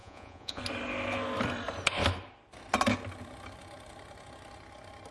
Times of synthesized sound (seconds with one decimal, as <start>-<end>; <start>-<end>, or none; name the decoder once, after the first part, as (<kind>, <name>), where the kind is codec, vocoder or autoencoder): 0.0-0.6 (vocoder, Vocos)